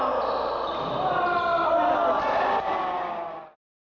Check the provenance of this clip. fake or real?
real